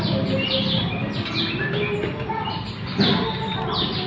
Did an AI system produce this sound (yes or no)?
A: no